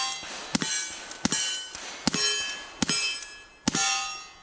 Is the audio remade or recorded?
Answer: recorded